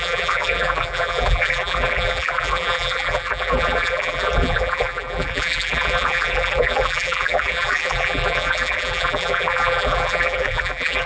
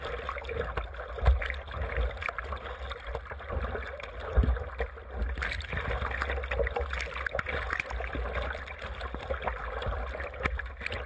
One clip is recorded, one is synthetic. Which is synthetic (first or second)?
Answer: first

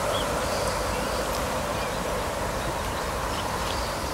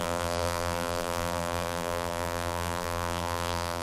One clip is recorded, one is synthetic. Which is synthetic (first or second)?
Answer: second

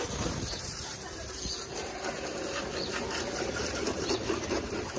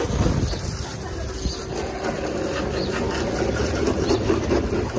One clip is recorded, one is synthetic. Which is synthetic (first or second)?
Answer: first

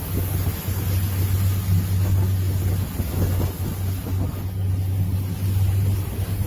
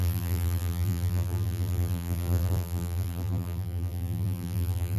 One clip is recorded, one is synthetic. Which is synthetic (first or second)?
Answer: second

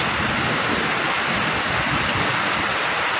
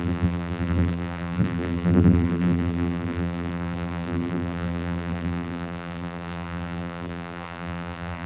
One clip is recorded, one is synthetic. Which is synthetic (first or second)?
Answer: second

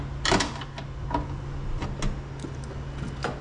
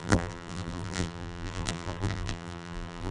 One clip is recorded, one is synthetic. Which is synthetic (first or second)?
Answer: second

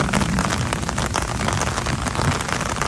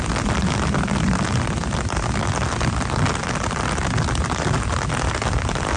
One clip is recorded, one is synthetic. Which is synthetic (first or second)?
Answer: second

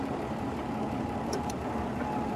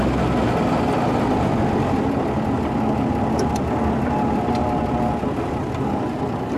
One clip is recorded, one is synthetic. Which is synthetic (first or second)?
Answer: first